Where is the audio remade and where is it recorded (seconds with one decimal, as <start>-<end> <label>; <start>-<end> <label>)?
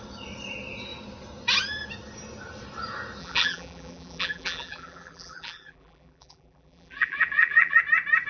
0.0-3.2 recorded; 3.2-7.8 remade; 7.8-8.3 recorded